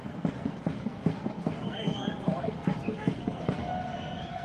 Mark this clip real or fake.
fake